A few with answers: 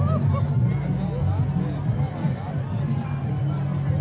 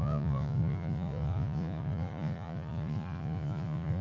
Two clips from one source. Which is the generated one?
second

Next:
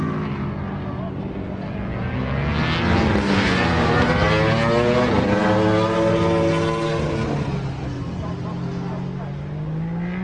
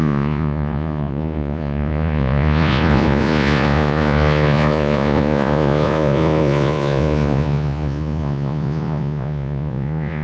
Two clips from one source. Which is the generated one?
second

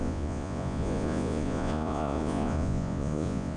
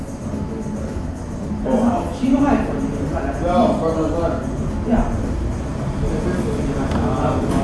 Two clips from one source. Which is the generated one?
first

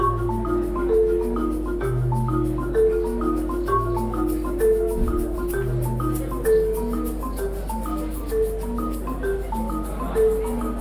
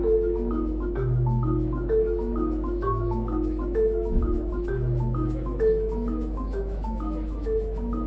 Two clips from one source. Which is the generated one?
second